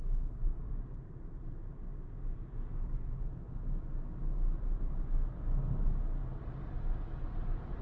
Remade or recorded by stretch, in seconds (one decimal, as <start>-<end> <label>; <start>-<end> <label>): 0.0-7.8 recorded